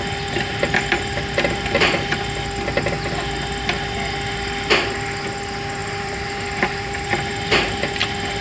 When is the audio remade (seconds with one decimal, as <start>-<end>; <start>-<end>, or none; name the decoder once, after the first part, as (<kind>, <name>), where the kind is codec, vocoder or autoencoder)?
5.8-7.7 (vocoder, BigVGAN v2)